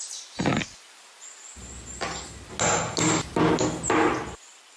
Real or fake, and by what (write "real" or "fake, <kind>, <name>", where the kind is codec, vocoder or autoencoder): real